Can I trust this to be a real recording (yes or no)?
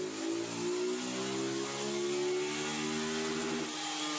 yes